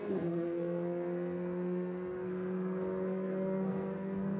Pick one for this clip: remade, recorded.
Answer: remade